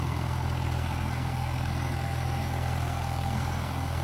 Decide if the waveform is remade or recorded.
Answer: remade